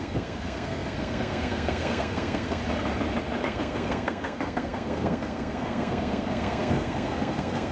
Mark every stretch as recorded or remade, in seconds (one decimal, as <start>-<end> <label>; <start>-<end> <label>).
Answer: 0.0-2.6 remade; 2.6-3.4 recorded; 3.4-7.7 remade